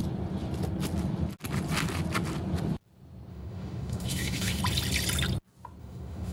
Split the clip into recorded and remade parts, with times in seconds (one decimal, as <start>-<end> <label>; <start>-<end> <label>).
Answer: 0.0-3.3 recorded; 3.3-4.6 remade; 4.6-5.8 recorded; 5.8-6.3 remade